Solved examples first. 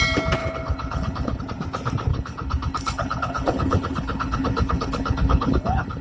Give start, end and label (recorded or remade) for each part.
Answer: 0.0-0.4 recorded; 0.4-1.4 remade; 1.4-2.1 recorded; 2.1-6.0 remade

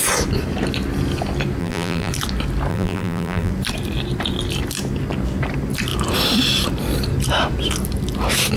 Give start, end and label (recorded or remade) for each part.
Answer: 0.0-1.6 recorded; 1.6-2.1 remade; 2.1-2.7 recorded; 2.7-3.5 remade; 3.5-8.6 recorded

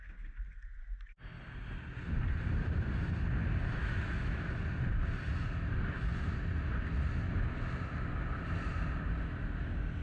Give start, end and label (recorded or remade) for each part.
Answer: 0.0-3.8 recorded; 3.8-4.5 remade; 4.5-10.0 recorded

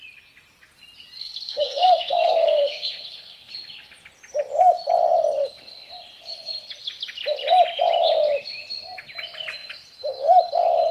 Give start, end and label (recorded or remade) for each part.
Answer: 0.0-1.2 recorded; 1.2-3.5 remade; 3.5-10.9 recorded

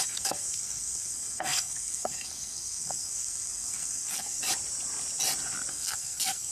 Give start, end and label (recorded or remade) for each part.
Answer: 0.0-4.4 remade; 4.4-5.7 recorded; 5.7-6.5 remade

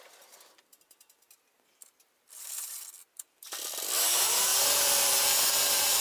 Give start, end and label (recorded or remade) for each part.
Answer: 0.0-4.5 remade; 4.5-5.5 recorded; 5.5-6.0 remade

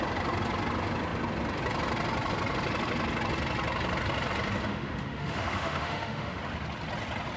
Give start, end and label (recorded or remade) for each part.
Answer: 0.0-4.7 recorded; 4.7-6.4 remade; 6.4-7.4 recorded